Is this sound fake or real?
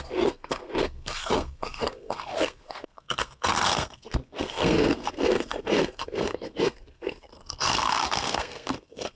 fake